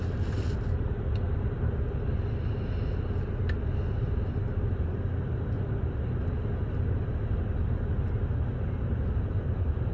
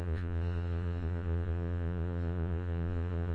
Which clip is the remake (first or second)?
second